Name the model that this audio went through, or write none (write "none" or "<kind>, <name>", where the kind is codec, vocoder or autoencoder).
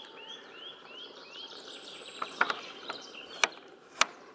vocoder, BigVGAN v2